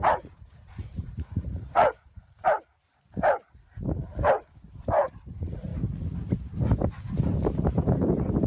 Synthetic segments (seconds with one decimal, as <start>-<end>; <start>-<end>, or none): 0.0-2.4; 5.2-5.7